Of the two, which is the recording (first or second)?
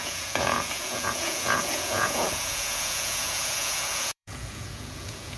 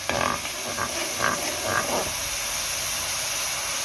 second